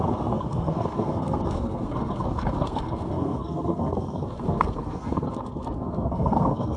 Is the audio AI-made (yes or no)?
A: yes